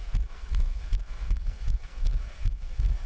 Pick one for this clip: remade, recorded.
remade